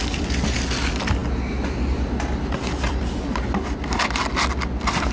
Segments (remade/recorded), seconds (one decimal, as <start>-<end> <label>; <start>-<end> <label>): 0.0-5.1 recorded